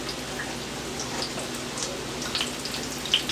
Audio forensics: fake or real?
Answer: real